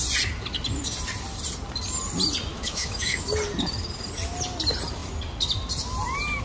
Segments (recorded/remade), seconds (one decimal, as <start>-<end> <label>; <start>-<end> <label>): 0.0-2.5 recorded; 2.5-3.2 remade; 3.2-6.4 recorded